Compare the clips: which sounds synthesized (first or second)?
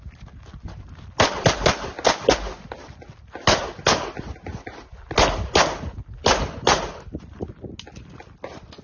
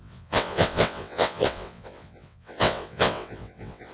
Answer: second